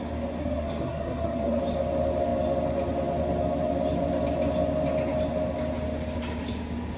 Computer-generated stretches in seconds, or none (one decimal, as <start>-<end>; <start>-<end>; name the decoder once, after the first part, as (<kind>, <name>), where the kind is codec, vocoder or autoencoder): 0.4-1.6 (codec, SNAC)